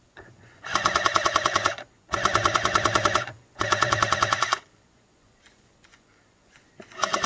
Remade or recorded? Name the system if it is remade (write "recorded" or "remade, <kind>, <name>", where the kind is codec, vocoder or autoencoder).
remade, vocoder, Vocos